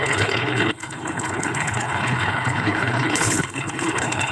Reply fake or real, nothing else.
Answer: fake